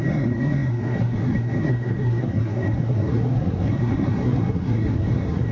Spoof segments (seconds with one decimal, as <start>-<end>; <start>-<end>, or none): 0.0-5.5